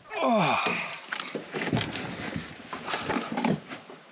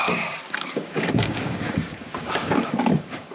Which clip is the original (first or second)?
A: first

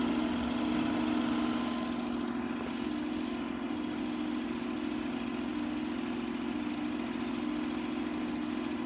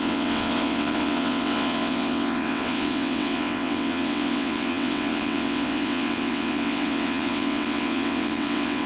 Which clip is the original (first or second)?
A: first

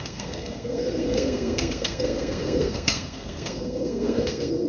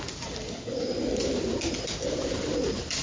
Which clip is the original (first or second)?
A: second